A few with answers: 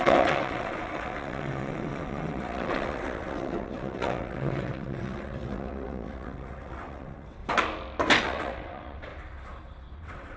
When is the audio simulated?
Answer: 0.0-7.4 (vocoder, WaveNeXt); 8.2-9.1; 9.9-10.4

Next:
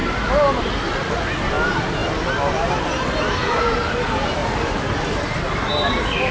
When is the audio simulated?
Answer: 4.4-5.0 (vocoder, BigVGAN v2)

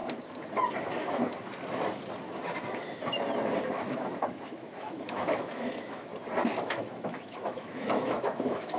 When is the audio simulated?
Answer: 3.7-6.1 (autoencoder, DAC-VAE); 6.7-8.8

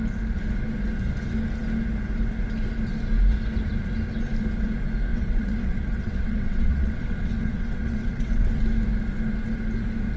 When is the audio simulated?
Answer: 5.1-8.6 (vocoder, WaveNeXt)

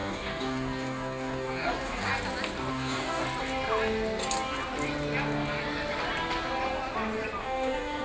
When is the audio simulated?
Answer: 0.0-2.1 (codec, DAC); 2.7-3.2; 7.4-8.0

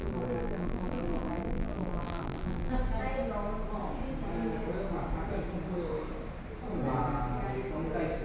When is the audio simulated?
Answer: 0.0-2.7 (vocoder, BigVGAN v2)

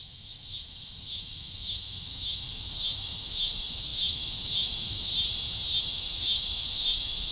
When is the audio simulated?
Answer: 0.0-5.1 (autoencoder, DAC-VAE); 5.8-7.3